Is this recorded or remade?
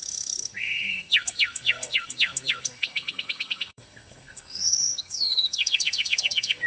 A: remade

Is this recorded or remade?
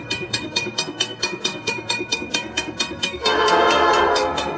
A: remade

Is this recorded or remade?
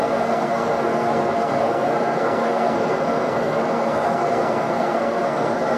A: remade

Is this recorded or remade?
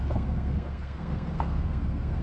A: remade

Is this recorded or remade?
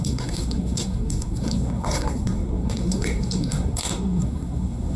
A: remade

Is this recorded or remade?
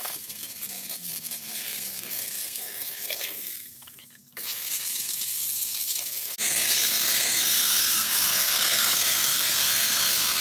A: remade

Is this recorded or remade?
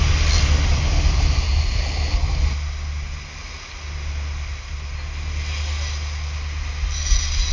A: recorded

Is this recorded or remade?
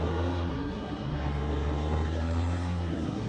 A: remade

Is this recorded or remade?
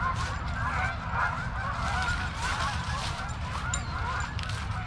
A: recorded